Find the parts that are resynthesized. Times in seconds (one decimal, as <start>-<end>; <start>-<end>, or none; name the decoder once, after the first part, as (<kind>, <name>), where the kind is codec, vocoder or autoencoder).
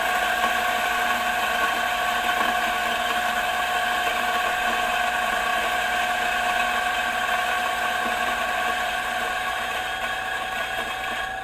none